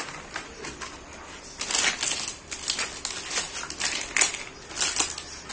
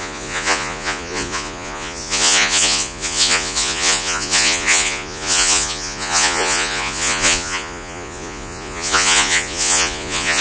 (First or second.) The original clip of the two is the first